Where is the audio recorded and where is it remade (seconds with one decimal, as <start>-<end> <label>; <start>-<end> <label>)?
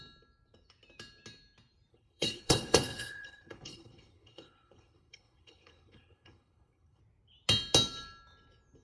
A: 0.0-1.9 recorded; 1.9-7.0 remade; 7.0-8.8 recorded